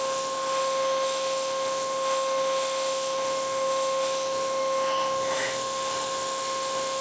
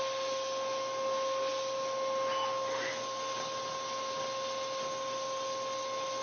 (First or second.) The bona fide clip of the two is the second